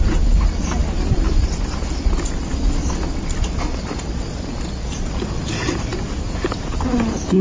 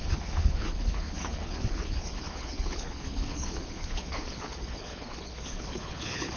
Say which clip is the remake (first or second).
second